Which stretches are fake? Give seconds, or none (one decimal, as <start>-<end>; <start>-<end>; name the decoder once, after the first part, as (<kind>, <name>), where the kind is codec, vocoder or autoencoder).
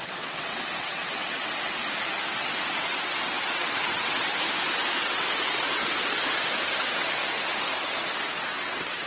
0.0-1.8 (vocoder, WaveNeXt); 2.8-4.3; 5.0-5.8; 6.8-7.2; 8.2-9.1